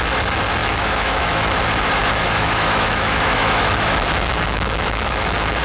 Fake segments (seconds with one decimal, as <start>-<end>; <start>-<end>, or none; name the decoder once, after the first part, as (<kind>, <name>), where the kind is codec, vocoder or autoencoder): 0.6-1.6 (autoencoder, DAC-VAE); 2.0-5.6